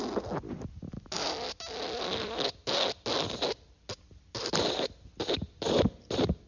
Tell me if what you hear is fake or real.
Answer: real